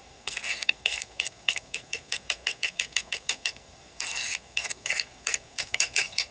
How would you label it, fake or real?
fake